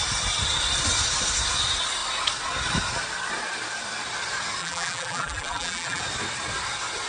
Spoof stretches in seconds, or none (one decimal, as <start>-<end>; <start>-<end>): 4.6-6.0